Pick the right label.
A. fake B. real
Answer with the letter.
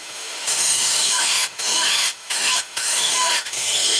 A